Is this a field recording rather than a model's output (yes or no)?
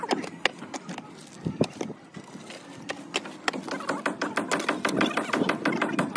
yes